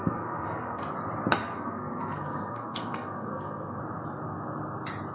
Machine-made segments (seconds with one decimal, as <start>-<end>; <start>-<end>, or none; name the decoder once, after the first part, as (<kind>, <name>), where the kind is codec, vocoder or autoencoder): 0.0-0.8 (codec, SNAC); 1.4-3.8